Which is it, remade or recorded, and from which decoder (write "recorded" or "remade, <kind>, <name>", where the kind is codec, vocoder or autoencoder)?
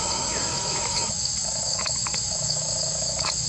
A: remade, autoencoder, DAC-VAE